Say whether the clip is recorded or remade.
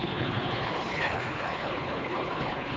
remade